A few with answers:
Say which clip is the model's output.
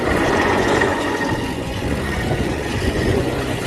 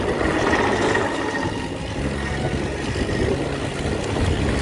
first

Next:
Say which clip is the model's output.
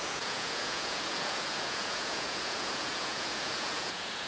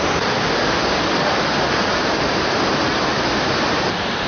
first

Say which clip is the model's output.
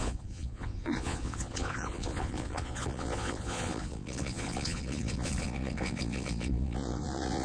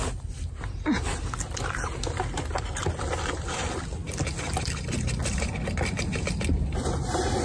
first